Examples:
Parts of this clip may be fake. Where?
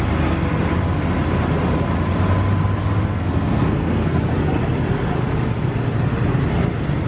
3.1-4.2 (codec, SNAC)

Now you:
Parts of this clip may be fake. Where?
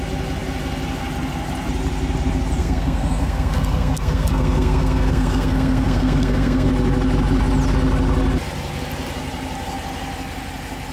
2.6-6.7 (codec, SNAC)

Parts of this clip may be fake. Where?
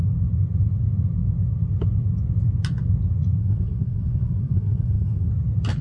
3.4-5.3 (codec, SNAC)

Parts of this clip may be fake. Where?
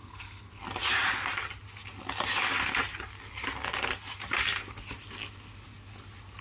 0.0-0.6 (codec, SNAC)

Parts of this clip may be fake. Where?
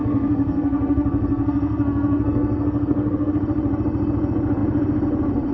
0.0-3.3 (codec, SNAC)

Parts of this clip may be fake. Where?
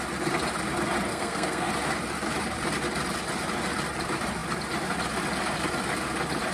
1.1-1.7 (codec, SNAC)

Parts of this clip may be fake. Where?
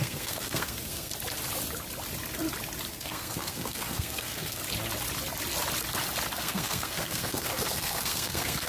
0.0-1.1 (codec, SNAC); 2.9-4.6; 6.4-8.7